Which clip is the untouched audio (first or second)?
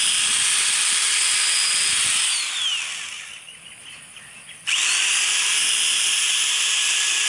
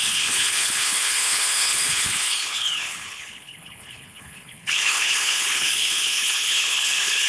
first